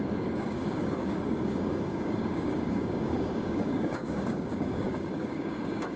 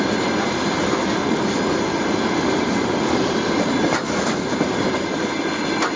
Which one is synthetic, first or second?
first